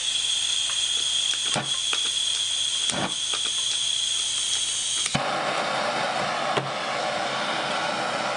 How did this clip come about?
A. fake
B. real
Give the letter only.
B